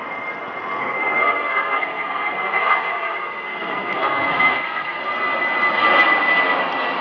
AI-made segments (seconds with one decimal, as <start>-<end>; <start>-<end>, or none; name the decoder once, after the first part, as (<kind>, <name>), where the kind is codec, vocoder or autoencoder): 0.8-5.0 (codec, SNAC)